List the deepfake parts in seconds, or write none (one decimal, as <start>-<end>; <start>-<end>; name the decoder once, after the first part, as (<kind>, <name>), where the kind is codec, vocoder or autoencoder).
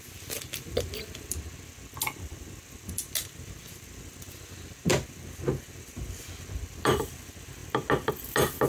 none